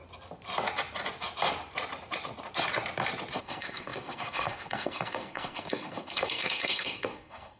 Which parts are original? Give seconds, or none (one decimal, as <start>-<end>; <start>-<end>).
0.0-3.4